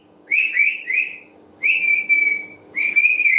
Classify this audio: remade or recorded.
remade